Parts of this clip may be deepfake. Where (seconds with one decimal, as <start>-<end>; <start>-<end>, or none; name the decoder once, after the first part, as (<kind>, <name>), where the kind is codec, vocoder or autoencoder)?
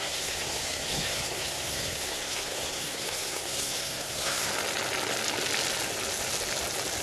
0.0-4.5 (codec, SNAC)